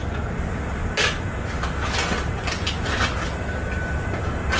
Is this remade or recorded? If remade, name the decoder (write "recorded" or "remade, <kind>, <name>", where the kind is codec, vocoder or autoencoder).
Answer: recorded